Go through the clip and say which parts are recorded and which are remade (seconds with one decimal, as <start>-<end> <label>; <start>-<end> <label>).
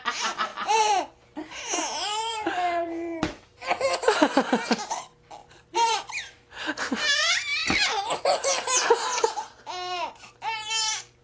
0.0-0.5 recorded; 0.5-1.0 remade; 1.0-1.9 recorded; 1.9-3.5 remade; 3.5-5.4 recorded; 5.4-6.6 remade; 6.6-11.2 recorded